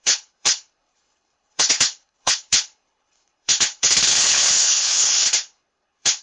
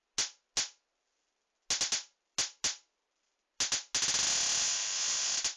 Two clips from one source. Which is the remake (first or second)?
first